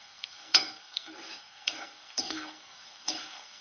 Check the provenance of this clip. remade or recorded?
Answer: remade